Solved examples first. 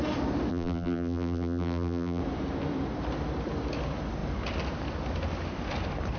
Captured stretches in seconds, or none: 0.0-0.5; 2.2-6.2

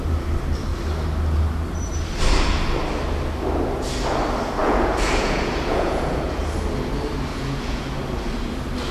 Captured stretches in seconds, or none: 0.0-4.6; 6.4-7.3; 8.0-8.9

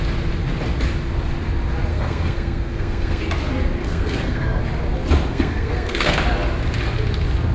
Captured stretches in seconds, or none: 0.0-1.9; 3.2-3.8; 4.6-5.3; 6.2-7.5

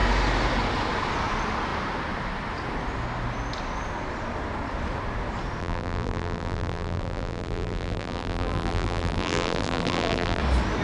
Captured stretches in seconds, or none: 0.0-5.6; 10.4-10.8